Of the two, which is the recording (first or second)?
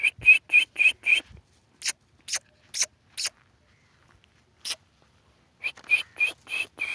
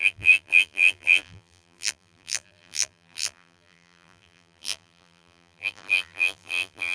first